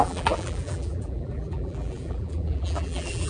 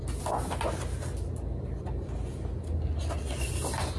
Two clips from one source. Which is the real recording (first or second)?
second